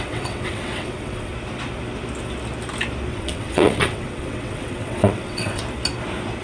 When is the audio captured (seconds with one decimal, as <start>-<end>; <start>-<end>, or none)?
1.3-3.1; 5.6-6.4